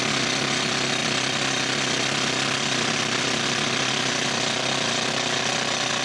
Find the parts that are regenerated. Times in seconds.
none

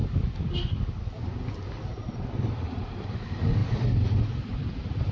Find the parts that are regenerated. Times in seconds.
none

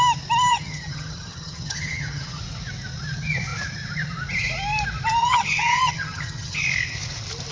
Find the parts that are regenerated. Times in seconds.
0.5-2.4; 5.2-6.6

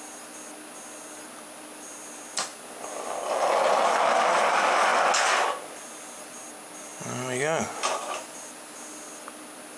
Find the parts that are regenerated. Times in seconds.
none

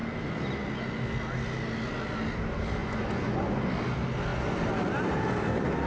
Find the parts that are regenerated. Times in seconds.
2.8-3.6

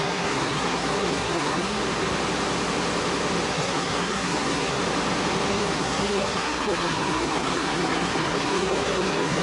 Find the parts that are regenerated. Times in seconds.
0.0-1.8; 3.5-4.8; 5.5-9.4

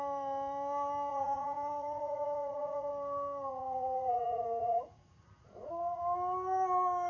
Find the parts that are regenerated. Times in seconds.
1.1-2.9; 3.5-6.0